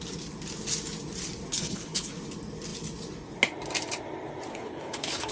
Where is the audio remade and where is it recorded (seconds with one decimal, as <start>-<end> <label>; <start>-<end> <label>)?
0.0-1.5 recorded; 1.5-2.1 remade; 2.1-4.5 recorded; 4.5-5.3 remade

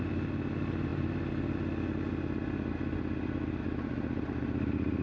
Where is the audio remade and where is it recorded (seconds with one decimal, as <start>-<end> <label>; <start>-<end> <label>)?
0.0-5.0 recorded

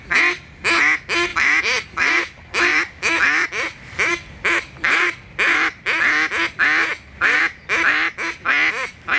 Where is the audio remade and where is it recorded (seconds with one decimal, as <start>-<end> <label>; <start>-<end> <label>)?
0.0-1.3 recorded; 1.3-6.0 remade; 6.0-7.4 recorded; 7.4-8.1 remade; 8.1-9.2 recorded